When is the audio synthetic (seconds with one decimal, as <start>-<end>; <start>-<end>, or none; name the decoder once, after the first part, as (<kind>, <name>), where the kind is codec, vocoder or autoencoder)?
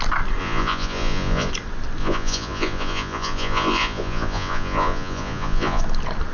0.4-1.5 (vocoder, Vocos); 2.0-5.8